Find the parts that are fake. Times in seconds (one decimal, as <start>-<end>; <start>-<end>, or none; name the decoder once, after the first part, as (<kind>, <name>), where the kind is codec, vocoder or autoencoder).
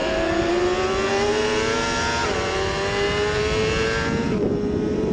0.0-0.5 (vocoder, BigVGAN v2)